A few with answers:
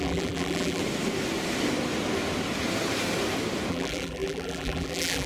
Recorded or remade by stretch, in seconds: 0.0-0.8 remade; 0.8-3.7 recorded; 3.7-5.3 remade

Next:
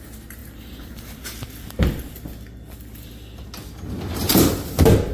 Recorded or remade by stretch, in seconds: 0.0-4.3 recorded; 4.3-5.1 remade